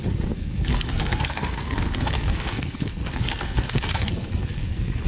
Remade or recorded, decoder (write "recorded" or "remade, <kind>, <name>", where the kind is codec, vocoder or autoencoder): remade, codec, SNAC